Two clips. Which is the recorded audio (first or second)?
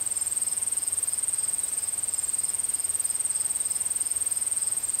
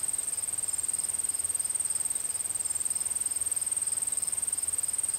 second